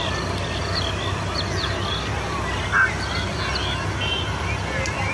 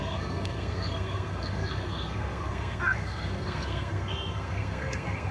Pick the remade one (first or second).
second